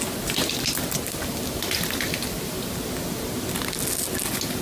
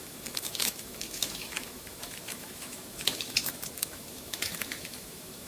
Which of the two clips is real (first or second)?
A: first